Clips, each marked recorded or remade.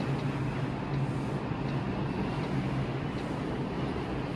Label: recorded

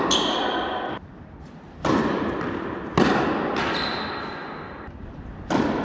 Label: recorded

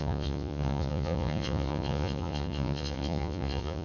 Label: remade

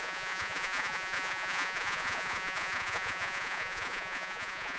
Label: remade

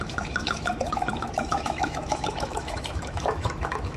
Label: remade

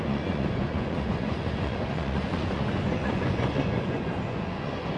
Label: remade